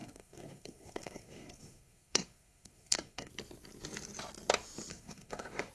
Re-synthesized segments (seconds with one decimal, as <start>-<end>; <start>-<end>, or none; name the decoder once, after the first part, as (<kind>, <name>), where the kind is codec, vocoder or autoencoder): 0.0-3.3 (codec, SNAC); 4.9-5.7